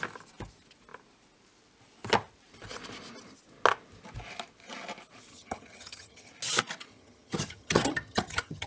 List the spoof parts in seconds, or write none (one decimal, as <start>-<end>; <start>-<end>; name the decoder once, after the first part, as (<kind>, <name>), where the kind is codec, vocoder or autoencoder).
5.3-6.3 (vocoder, HiFi-GAN); 6.9-8.7